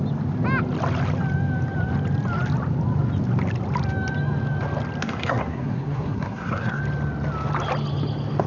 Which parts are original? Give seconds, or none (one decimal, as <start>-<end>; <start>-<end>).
0.0-5.0; 6.8-8.5